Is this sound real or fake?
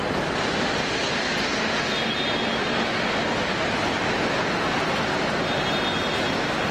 real